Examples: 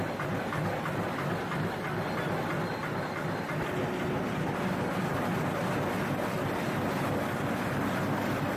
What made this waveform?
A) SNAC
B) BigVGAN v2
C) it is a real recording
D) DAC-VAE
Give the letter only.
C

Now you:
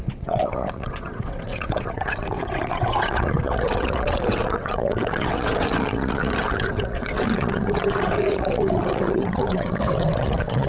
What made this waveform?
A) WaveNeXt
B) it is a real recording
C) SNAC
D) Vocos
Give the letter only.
A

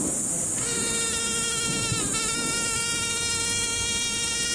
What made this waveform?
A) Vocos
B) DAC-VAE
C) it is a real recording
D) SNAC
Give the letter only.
C